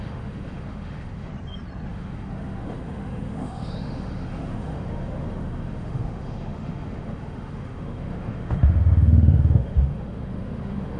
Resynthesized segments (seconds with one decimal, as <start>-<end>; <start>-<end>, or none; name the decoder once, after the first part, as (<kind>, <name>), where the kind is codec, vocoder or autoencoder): 0.0-1.3 (autoencoder, DAC-VAE); 1.9-11.0